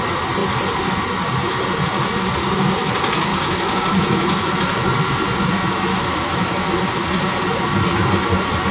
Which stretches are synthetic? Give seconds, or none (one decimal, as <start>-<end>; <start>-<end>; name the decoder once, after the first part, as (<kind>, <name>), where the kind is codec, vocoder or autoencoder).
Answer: 3.3-4.6 (autoencoder, DAC-VAE); 5.9-6.7